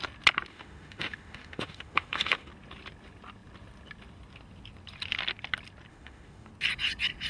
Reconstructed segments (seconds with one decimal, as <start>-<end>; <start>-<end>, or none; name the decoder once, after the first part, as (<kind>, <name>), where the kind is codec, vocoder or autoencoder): 0.5-2.5 (autoencoder, DAC-VAE); 5.9-6.5